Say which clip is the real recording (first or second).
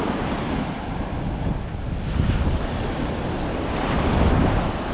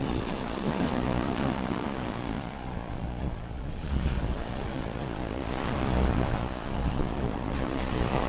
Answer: first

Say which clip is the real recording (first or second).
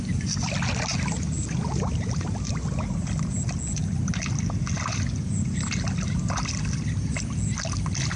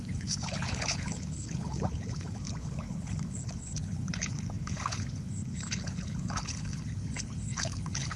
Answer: first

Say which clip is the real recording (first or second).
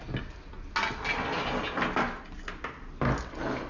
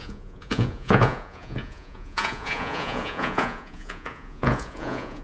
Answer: first